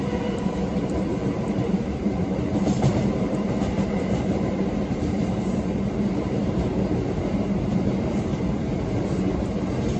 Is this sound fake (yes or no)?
yes